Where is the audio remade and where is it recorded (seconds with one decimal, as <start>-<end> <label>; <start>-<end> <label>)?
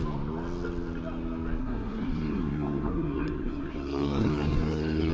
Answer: 0.0-1.6 recorded; 1.6-5.1 remade